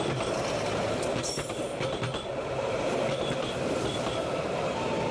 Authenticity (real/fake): fake